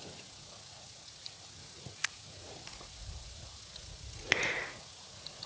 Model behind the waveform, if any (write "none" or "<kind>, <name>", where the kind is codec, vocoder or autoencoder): vocoder, Vocos